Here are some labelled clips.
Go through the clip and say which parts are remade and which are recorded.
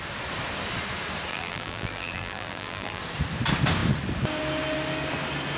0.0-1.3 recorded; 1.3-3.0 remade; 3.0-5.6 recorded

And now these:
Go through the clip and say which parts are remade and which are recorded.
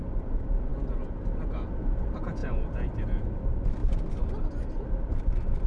0.0-3.8 recorded; 3.8-4.8 remade; 4.8-5.7 recorded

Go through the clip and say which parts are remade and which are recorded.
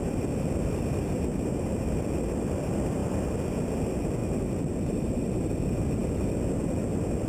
0.0-1.3 recorded; 1.3-2.0 remade; 2.0-4.2 recorded; 4.2-5.4 remade; 5.4-7.3 recorded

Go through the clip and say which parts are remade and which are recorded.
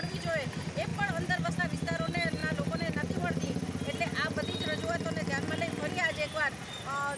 0.0-7.2 recorded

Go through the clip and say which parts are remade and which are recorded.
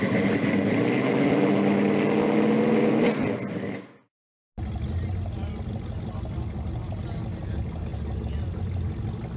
0.0-9.4 recorded